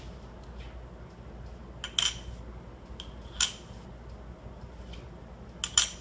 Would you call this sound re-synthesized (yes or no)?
no